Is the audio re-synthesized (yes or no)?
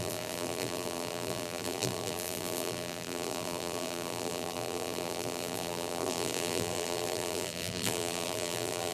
yes